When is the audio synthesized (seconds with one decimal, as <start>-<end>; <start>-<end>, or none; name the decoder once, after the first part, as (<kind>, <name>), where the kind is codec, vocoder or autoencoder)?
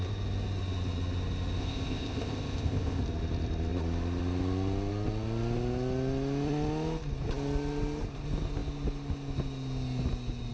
1.6-3.0 (codec, ZipCodec)